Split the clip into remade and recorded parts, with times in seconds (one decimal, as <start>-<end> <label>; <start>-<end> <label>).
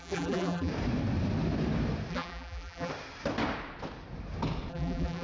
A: 0.0-0.7 remade; 0.7-2.1 recorded; 2.1-2.9 remade; 2.9-4.7 recorded; 4.7-5.2 remade